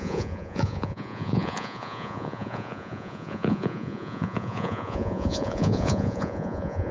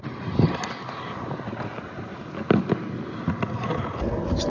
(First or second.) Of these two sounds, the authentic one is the second